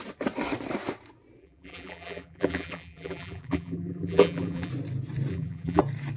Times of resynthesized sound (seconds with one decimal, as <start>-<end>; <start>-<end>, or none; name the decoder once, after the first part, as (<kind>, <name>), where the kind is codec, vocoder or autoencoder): 1.4-4.7 (vocoder, BigVGAN v2); 5.3-5.8